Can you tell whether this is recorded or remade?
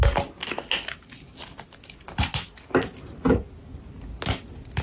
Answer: recorded